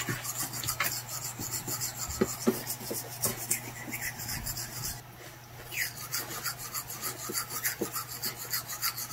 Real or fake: real